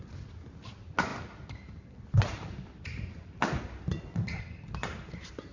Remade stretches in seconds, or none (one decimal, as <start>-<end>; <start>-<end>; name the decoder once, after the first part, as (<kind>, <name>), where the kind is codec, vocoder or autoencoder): none